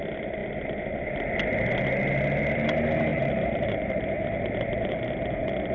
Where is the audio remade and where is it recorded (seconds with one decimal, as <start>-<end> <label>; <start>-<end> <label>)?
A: 0.0-3.1 recorded; 3.1-5.0 remade; 5.0-5.7 recorded